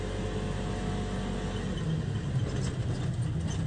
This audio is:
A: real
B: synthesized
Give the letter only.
A